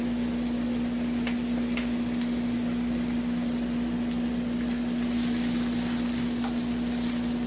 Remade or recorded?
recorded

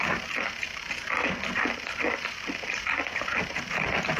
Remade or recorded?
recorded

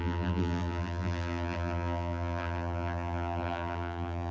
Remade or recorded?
remade